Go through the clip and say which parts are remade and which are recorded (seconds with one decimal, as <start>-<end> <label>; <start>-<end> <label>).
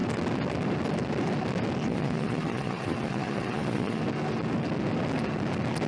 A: 0.0-1.9 recorded; 1.9-4.0 remade; 4.0-5.9 recorded